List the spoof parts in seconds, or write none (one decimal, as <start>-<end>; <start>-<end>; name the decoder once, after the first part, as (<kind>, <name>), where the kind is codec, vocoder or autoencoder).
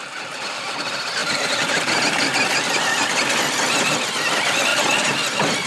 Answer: 1.2-2.0 (vocoder, BigVGAN v2)